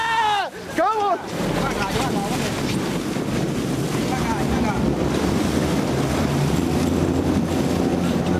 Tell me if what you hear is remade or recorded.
recorded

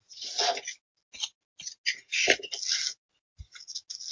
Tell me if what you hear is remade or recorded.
recorded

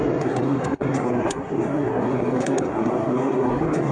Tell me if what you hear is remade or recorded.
remade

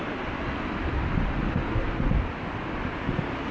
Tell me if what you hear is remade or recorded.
recorded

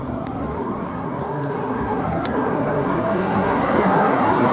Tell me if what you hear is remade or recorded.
remade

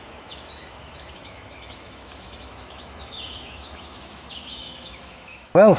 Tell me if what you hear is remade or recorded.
remade